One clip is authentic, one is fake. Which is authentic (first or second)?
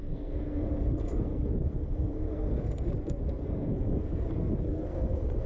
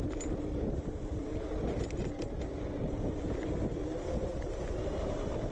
second